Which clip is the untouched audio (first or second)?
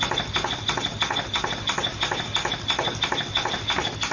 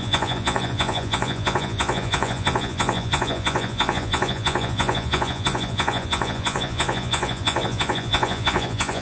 first